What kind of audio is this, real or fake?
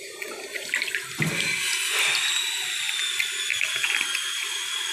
real